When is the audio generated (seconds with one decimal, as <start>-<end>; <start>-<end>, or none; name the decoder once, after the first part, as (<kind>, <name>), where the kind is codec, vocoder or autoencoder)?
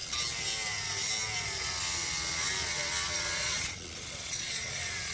3.1-5.1 (vocoder, Vocos)